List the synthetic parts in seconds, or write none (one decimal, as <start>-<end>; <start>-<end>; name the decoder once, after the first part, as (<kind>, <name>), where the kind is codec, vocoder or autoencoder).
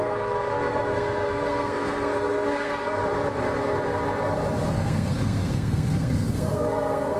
0.0-3.0 (codec, SNAC); 4.7-7.2